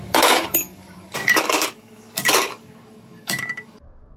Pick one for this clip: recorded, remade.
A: remade